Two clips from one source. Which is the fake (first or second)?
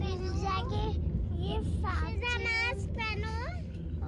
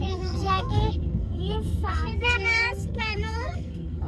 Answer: second